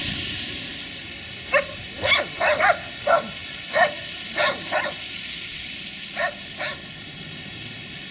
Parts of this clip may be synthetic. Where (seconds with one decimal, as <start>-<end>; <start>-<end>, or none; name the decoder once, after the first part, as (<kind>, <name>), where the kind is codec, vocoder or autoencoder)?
none